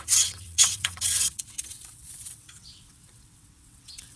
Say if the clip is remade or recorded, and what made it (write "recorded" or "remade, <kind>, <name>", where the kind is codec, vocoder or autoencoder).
remade, vocoder, WaveNeXt